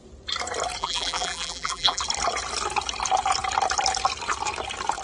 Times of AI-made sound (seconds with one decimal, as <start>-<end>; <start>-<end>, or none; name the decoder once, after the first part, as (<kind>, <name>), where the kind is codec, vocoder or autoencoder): 0.8-2.0 (vocoder, BigVGAN v2)